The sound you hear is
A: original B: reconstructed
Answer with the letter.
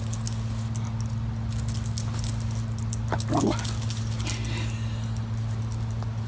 A